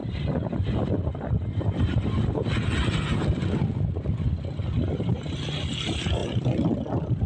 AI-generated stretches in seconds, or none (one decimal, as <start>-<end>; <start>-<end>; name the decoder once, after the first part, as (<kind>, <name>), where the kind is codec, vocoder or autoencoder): none